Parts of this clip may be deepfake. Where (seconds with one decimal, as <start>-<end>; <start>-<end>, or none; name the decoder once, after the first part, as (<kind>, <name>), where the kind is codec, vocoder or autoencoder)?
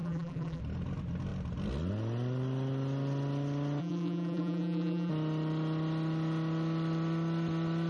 0.0-0.6 (vocoder, BigVGAN v2); 3.8-5.1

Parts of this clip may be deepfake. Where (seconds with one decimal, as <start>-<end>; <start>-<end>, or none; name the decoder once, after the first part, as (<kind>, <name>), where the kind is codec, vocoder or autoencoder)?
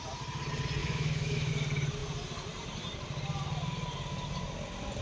0.8-1.5 (autoencoder, DAC-VAE)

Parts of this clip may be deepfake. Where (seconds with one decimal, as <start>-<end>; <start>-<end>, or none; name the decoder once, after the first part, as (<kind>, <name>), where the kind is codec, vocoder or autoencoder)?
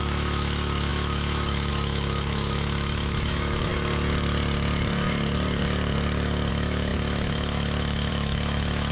0.0-3.7 (autoencoder, DAC-VAE); 6.5-8.9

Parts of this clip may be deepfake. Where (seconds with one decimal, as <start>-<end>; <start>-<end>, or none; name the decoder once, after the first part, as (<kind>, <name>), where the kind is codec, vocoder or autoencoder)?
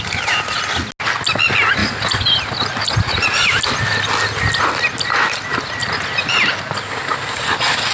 1.8-3.6 (vocoder, BigVGAN v2); 5.5-7.4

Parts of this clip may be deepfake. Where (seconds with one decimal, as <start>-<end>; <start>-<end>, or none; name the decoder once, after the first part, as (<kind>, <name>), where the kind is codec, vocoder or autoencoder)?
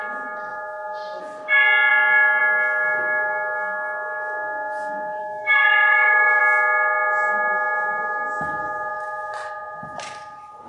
0.5-1.2 (autoencoder, DAC-VAE); 5.2-6.4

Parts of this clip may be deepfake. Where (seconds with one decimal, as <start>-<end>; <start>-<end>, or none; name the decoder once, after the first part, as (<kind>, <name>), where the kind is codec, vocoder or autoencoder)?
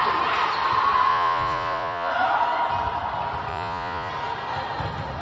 1.1-2.1 (vocoder, Vocos); 3.5-4.1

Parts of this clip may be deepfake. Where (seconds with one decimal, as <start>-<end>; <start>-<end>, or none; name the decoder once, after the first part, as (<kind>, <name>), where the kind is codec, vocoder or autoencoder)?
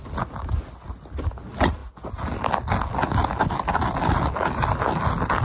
none